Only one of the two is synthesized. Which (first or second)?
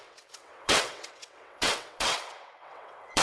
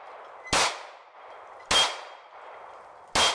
first